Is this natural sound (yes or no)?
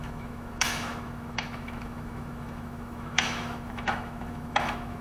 no